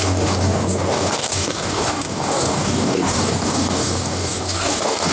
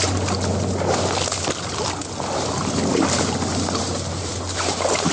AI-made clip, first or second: first